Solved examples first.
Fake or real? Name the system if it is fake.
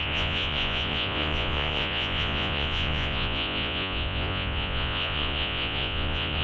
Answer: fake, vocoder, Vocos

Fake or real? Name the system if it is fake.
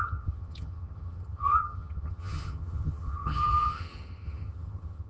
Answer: fake, vocoder, HiFi-GAN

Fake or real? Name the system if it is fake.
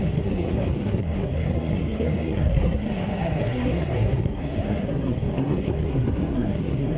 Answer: fake, codec, SNAC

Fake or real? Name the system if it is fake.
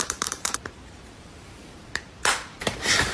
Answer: fake, vocoder, BigVGAN v2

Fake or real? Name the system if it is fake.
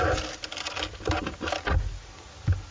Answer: real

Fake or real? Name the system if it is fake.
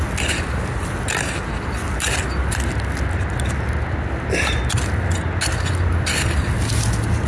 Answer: real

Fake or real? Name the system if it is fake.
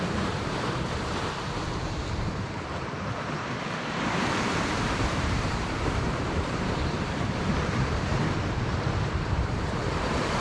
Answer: fake, vocoder, BigVGAN v2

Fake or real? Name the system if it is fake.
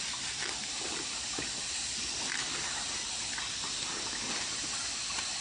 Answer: real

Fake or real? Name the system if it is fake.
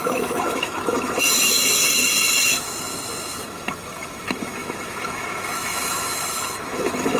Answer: fake, autoencoder, DAC-VAE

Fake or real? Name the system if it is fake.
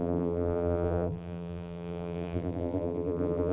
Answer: fake, vocoder, BigVGAN v2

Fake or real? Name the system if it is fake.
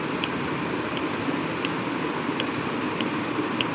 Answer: real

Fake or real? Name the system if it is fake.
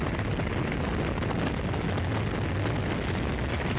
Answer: real